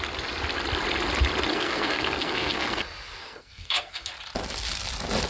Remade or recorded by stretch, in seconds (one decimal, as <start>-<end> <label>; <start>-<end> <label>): 0.0-1.5 recorded; 1.5-2.8 remade; 2.8-3.2 recorded; 3.2-4.1 remade; 4.1-5.3 recorded